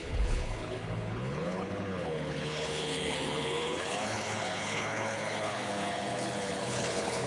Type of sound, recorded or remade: remade